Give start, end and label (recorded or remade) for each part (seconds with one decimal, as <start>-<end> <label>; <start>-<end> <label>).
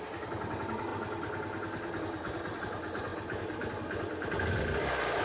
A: 0.0-5.2 recorded